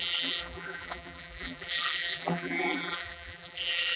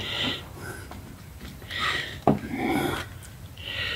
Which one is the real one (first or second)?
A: second